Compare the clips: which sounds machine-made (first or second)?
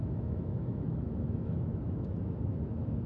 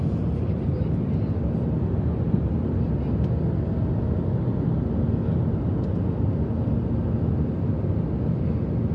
first